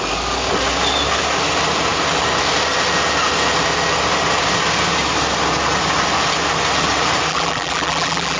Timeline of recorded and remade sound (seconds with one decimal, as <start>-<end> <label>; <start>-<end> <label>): 0.0-7.3 recorded; 7.3-8.4 remade